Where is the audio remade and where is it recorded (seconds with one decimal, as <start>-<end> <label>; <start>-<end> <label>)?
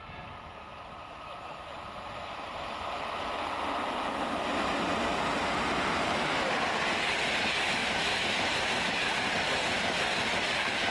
0.0-5.1 recorded; 5.1-6.6 remade; 6.6-7.8 recorded; 7.8-9.0 remade; 9.0-10.9 recorded